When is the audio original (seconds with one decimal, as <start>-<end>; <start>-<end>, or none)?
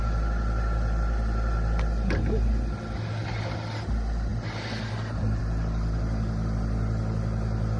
0.0-7.8